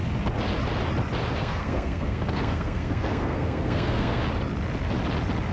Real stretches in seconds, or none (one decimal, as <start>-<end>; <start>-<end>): 0.0-1.4; 4.2-5.5